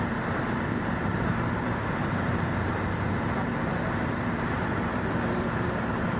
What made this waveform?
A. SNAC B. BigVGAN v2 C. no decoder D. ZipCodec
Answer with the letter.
B